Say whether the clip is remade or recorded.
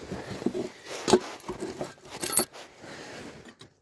recorded